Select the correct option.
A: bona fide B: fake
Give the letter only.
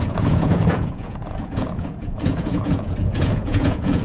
B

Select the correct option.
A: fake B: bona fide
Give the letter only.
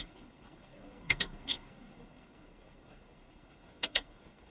A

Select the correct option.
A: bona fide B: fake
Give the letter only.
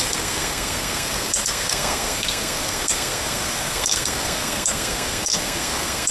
B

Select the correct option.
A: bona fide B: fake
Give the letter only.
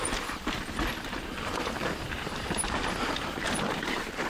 B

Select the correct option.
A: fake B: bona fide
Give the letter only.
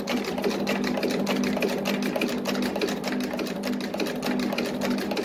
B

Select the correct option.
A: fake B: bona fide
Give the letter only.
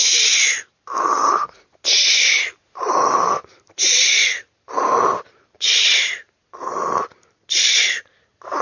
B